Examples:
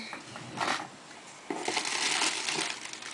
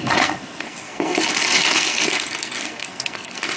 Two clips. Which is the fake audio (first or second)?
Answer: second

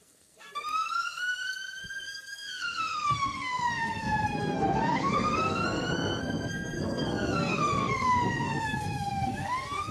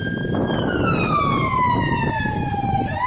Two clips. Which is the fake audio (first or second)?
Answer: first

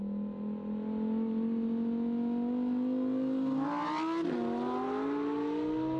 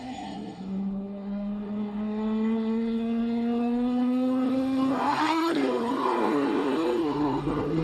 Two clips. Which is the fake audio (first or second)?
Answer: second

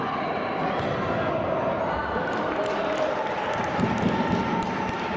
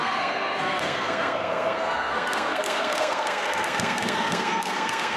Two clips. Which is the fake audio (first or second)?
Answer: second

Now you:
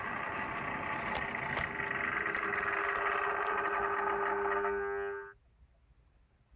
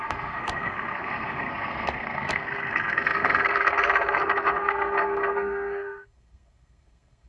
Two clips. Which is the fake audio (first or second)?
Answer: second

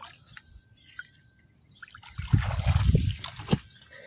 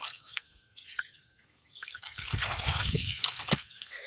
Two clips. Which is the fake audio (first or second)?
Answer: second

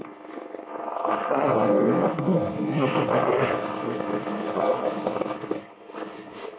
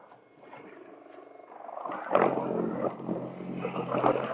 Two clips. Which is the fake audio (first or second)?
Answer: first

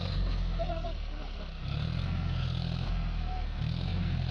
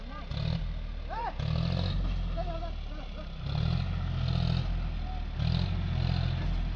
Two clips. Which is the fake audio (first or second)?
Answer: first